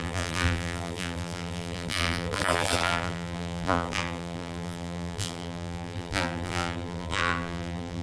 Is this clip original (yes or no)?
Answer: no